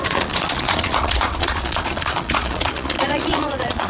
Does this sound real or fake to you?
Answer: fake